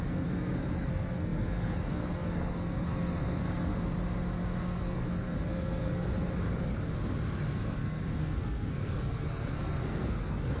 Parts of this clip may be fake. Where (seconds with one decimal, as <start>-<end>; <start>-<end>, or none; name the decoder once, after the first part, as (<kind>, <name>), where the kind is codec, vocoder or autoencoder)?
0.0-3.7 (codec, SNAC); 4.6-6.1; 7.5-10.6